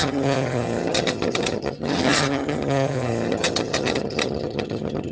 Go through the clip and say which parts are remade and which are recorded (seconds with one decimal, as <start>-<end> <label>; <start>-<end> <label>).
0.0-5.1 remade